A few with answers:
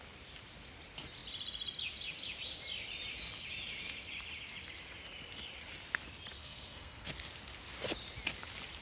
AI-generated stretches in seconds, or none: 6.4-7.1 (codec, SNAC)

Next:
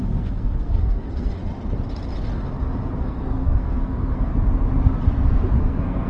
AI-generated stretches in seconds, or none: 0.0-1.4 (codec, SNAC); 3.0-4.3; 5.6-6.1

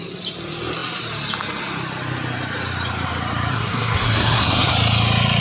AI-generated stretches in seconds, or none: 3.5-4.7 (codec, SNAC)